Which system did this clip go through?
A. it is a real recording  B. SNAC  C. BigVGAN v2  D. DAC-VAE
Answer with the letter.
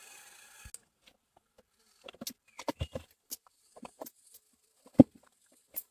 A